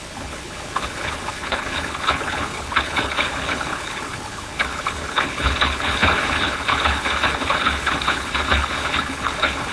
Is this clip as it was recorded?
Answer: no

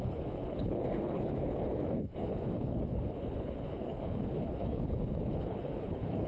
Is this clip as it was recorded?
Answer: no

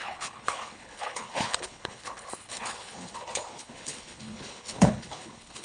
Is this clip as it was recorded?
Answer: no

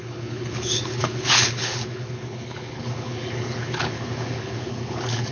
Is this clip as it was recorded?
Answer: no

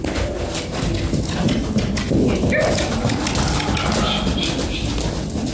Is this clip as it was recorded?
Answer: yes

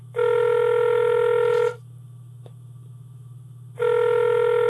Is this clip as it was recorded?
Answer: yes